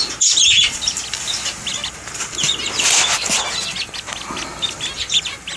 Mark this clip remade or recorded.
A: recorded